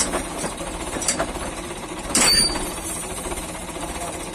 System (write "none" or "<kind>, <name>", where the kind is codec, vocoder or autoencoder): vocoder, BigVGAN v2